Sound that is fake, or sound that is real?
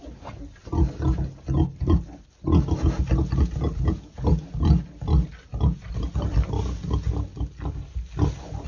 real